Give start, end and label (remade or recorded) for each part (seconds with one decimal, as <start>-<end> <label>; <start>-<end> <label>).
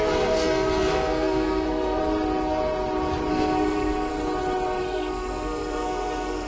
0.0-2.0 remade; 2.0-3.3 recorded; 3.3-4.1 remade; 4.1-4.8 recorded; 4.8-6.5 remade